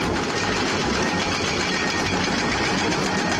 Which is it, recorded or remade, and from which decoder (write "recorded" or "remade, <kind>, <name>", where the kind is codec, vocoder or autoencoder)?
recorded